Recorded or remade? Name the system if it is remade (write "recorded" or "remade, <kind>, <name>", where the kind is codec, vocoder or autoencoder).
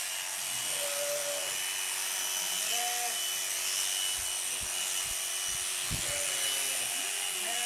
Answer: recorded